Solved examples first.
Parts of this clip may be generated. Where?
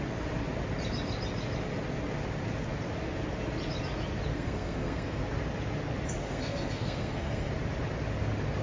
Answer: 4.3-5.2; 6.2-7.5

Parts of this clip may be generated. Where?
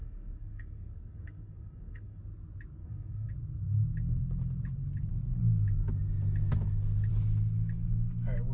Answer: 0.0-2.2; 2.8-3.3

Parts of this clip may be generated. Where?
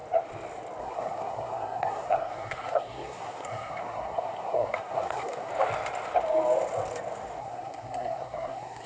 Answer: 0.8-5.5; 7.4-8.9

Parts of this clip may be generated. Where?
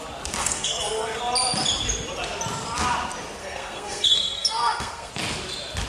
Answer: 0.4-1.2; 3.4-5.1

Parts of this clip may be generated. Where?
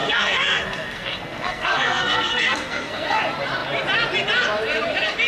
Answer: 0.0-3.2